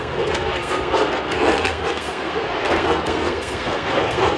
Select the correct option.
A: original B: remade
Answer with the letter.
B